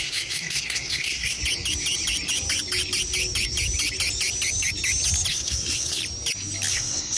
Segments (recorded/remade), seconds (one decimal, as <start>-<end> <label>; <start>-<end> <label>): 0.0-1.4 remade; 1.4-5.3 recorded; 5.3-6.0 remade; 6.0-6.7 recorded; 6.7-7.2 remade